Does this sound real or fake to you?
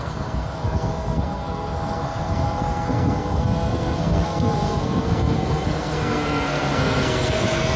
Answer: fake